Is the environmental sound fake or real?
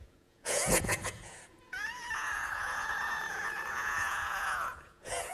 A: fake